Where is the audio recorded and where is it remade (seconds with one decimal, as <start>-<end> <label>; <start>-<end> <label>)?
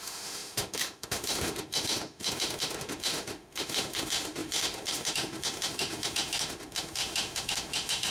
0.0-8.1 remade